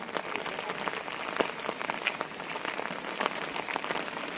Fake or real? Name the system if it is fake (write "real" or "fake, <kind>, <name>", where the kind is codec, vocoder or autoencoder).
real